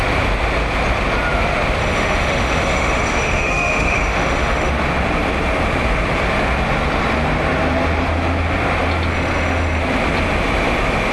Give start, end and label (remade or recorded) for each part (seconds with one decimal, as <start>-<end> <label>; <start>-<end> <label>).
0.0-1.8 recorded; 1.8-4.7 remade; 4.7-9.1 recorded; 9.1-9.8 remade; 9.8-11.1 recorded